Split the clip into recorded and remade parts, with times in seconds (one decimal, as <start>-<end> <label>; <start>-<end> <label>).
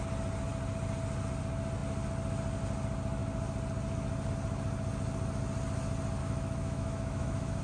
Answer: 0.0-6.2 recorded; 6.2-7.6 remade